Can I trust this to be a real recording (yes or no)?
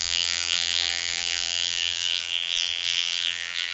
no